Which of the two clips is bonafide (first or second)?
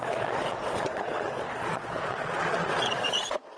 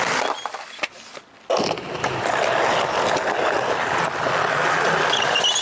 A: second